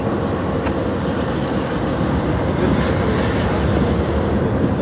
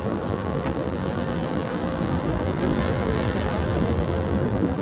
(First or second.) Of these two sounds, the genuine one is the first